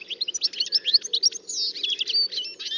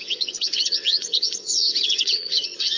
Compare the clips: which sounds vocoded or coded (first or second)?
second